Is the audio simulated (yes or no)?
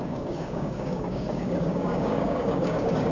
yes